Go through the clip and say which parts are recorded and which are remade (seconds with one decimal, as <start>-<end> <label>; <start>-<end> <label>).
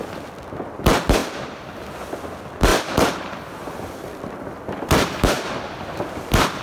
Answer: 0.0-1.2 recorded; 1.2-1.8 remade; 1.8-2.7 recorded; 2.7-6.6 remade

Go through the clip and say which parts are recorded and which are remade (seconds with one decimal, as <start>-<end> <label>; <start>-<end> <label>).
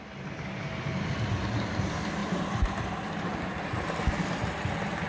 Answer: 0.0-2.2 recorded; 2.2-2.9 remade; 2.9-5.1 recorded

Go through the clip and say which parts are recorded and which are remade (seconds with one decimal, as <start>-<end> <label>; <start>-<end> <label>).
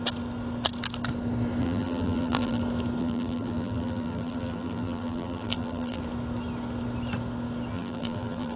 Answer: 0.0-1.6 recorded; 1.6-2.6 remade; 2.6-3.0 recorded; 3.0-6.0 remade; 6.0-7.7 recorded; 7.7-8.6 remade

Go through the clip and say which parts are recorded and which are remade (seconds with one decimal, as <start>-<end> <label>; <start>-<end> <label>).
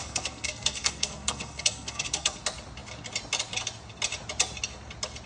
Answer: 0.0-2.4 remade; 2.4-5.3 recorded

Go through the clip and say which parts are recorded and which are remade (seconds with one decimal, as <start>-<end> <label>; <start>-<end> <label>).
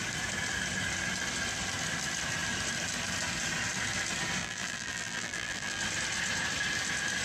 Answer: 0.0-4.4 recorded; 4.4-5.8 remade; 5.8-7.2 recorded